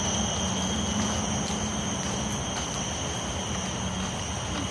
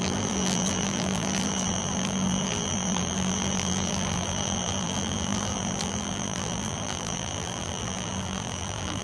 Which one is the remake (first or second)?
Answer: second